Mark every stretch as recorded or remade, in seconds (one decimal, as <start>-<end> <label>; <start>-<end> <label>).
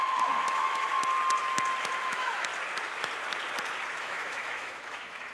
0.0-0.9 remade; 0.9-2.0 recorded; 2.0-2.5 remade; 2.5-4.0 recorded; 4.0-5.3 remade